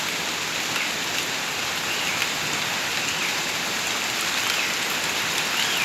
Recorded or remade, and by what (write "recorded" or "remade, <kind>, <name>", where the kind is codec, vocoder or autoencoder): recorded